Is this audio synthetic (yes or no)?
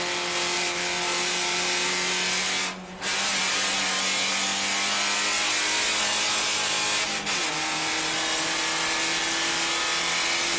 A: no